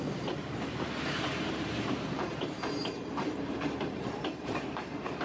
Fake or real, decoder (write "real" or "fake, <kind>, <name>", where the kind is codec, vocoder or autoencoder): fake, vocoder, BigVGAN v2